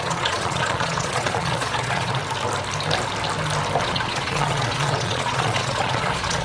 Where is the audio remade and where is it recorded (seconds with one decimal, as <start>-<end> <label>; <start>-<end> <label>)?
0.0-2.2 remade; 2.2-3.8 recorded; 3.8-6.4 remade